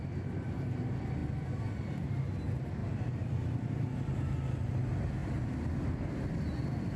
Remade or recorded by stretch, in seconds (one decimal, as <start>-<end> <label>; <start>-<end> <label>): 0.0-7.0 recorded